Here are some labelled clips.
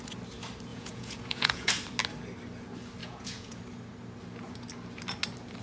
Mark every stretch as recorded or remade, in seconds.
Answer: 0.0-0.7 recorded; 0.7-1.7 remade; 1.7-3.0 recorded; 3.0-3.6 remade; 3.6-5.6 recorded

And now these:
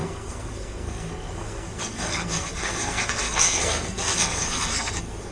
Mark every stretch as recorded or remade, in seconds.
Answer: 0.0-5.3 remade

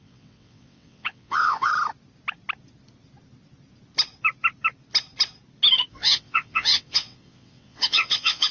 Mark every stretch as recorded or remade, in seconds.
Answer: 0.0-1.7 remade; 1.7-5.9 recorded; 5.9-8.5 remade

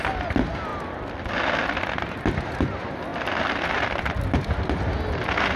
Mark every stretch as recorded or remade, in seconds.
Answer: 0.0-0.7 recorded; 0.7-1.3 remade; 1.3-3.1 recorded; 3.1-4.3 remade; 4.3-5.6 recorded

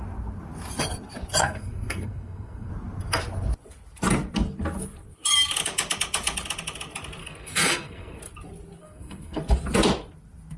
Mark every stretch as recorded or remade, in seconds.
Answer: 0.0-1.4 recorded; 1.4-2.7 remade; 2.7-7.2 recorded; 7.2-8.2 remade; 8.2-8.8 recorded; 8.8-9.4 remade; 9.4-10.6 recorded